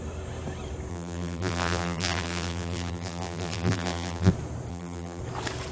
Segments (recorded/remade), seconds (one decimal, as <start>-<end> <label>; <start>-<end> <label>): 0.0-0.9 recorded; 0.9-4.3 remade; 4.3-4.7 recorded; 4.7-5.2 remade; 5.2-5.7 recorded